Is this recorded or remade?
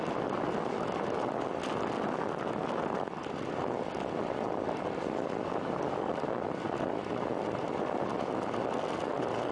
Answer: recorded